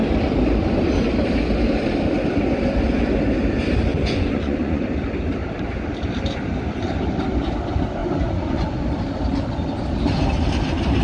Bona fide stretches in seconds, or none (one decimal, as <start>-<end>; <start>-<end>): 0.0-3.9; 4.8-8.0; 8.8-11.0